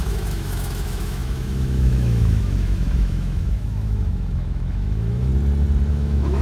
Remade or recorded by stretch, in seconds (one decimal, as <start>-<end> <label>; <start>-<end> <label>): 0.0-5.3 remade; 5.3-5.9 recorded; 5.9-6.4 remade